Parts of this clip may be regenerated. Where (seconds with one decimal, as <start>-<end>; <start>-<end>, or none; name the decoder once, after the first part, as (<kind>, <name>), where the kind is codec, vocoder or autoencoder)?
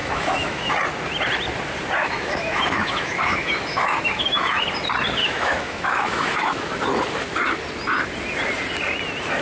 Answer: 0.0-0.7 (autoencoder, DAC-VAE); 2.0-4.6; 5.2-6.7